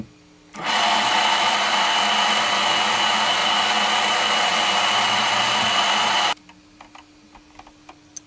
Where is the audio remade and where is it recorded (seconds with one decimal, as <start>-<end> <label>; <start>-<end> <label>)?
0.0-8.3 recorded